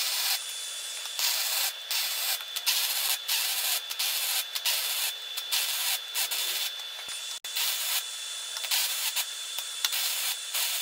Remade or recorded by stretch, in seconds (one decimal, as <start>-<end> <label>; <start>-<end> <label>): 0.0-8.8 recorded; 8.8-10.8 remade